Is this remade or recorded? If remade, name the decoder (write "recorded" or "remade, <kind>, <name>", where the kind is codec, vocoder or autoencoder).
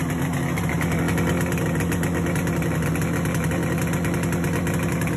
recorded